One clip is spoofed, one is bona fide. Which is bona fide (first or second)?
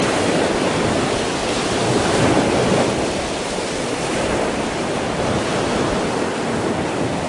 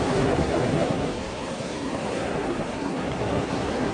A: first